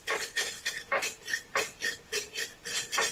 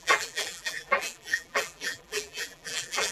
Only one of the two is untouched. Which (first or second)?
first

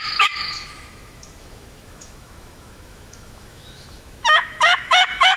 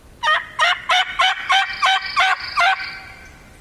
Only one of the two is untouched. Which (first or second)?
second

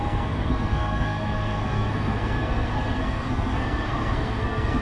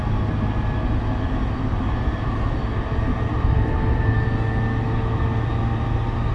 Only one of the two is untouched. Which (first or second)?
second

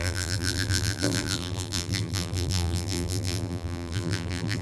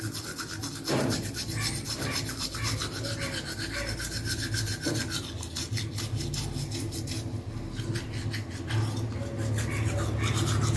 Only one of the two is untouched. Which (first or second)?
second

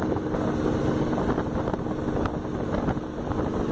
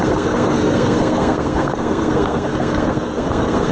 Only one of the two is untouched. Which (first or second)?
first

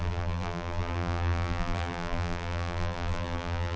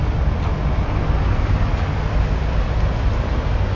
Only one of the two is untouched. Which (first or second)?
second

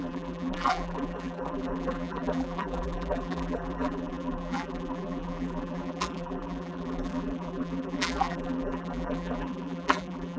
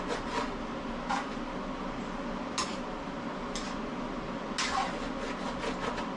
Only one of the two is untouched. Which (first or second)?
second